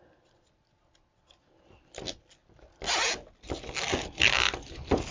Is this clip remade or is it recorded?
recorded